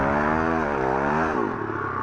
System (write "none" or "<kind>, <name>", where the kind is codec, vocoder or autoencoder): none